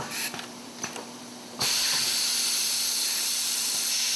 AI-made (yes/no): yes